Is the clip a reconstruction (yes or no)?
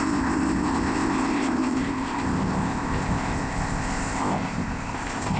yes